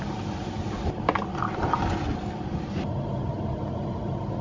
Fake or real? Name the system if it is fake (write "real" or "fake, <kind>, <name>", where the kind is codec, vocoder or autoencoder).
real